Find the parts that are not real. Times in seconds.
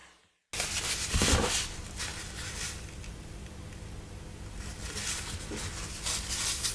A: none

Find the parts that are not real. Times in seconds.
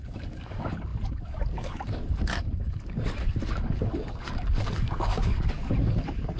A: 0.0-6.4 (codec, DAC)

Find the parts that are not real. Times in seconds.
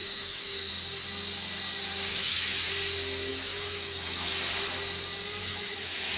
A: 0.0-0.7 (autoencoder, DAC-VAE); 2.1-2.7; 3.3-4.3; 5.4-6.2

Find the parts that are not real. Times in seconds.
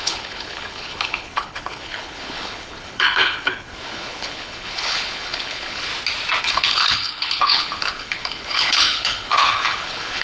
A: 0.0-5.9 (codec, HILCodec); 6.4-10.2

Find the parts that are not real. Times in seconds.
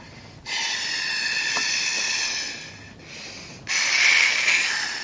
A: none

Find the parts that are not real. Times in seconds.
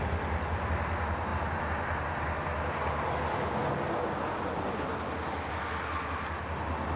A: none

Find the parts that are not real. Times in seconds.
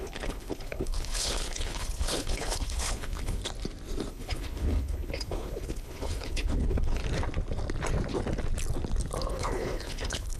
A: 0.0-3.4 (codec, HILCodec); 4.1-7.0; 9.3-10.4